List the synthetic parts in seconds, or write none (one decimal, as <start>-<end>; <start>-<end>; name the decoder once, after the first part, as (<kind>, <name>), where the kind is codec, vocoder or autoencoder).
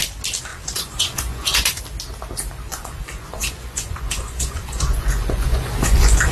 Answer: 0.5-1.8 (vocoder, Vocos); 2.7-6.3